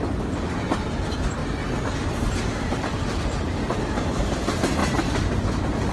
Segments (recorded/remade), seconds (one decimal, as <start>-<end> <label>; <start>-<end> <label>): 0.0-1.4 remade; 1.4-3.8 recorded; 3.8-4.8 remade; 4.8-5.9 recorded